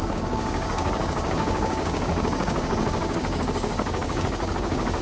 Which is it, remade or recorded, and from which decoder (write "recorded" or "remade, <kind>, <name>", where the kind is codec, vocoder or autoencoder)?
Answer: remade, codec, DAC